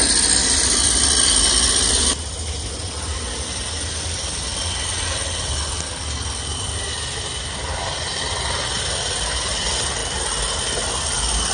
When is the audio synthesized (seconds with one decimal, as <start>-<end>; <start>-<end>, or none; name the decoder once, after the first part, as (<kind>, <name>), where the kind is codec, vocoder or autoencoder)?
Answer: none